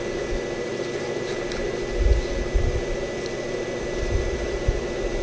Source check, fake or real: real